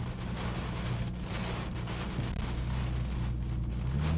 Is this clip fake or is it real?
real